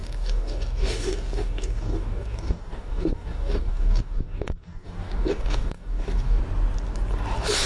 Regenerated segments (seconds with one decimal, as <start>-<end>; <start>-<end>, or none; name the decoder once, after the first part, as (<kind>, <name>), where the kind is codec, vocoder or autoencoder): 0.0-6.4 (codec, DAC)

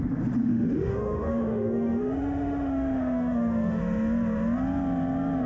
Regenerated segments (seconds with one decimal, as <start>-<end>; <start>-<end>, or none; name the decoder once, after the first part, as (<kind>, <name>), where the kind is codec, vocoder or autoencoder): 0.5-3.8 (autoencoder, DAC-VAE)

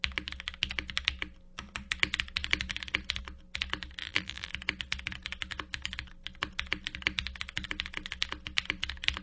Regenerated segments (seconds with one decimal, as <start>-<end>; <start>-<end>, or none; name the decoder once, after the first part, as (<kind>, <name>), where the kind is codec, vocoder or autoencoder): 4.0-4.5 (vocoder, BigVGAN v2)

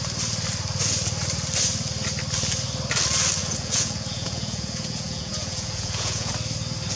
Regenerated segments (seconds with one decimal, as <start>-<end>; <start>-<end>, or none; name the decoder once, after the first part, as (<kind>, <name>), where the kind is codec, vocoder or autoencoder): 3.4-6.3 (vocoder, Vocos)

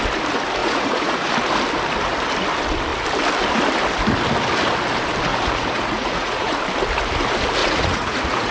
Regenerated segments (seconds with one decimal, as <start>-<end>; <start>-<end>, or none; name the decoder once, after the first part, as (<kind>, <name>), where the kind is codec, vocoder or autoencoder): 0.6-1.3 (vocoder, Vocos); 5.3-6.6; 7.6-8.5